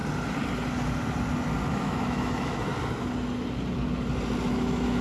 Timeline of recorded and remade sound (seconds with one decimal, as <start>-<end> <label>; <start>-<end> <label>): 0.0-1.7 recorded; 1.7-2.7 remade; 2.7-4.5 recorded; 4.5-5.0 remade

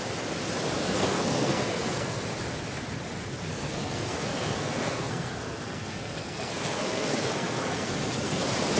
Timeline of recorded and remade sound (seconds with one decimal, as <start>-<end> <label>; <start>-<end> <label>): 0.0-0.8 recorded; 0.8-2.2 remade; 2.2-3.5 recorded; 3.5-8.4 remade; 8.4-8.8 recorded

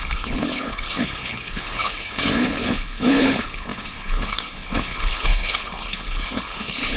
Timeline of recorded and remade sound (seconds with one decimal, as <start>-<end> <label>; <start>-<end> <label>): 0.0-7.0 remade

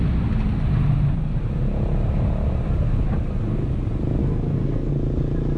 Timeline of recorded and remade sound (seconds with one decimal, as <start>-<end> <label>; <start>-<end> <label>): 0.0-4.2 recorded; 4.2-4.9 remade; 4.9-5.6 recorded

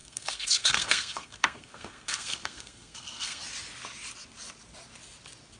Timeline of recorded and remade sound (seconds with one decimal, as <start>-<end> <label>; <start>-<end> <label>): 0.0-3.4 remade; 3.4-5.6 recorded

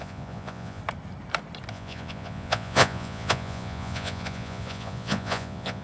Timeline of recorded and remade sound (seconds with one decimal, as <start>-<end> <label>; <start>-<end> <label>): 0.0-0.8 remade; 0.8-1.7 recorded; 1.7-5.8 remade